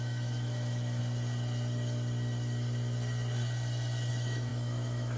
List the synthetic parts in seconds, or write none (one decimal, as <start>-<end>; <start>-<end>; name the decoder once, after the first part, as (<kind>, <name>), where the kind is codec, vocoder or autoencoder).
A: 0.0-1.0 (autoencoder, DAC-VAE); 4.1-5.2